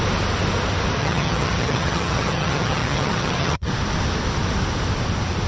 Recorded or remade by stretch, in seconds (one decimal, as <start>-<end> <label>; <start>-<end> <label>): 0.0-1.0 recorded; 1.0-3.7 remade; 3.7-5.5 recorded